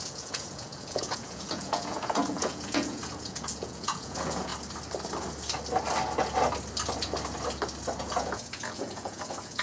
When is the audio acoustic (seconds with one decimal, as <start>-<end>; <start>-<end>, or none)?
4.5-8.0